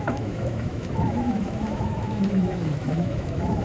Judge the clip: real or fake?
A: fake